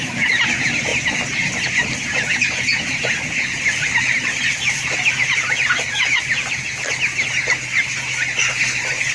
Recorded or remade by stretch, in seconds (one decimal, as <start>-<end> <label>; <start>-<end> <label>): 0.0-9.1 recorded